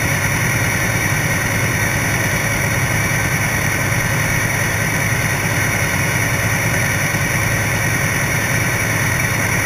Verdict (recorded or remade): remade